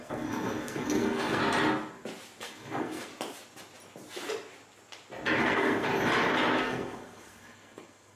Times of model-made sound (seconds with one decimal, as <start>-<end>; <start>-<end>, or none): 0.0-1.4; 2.4-3.1; 5.4-5.9; 6.6-8.1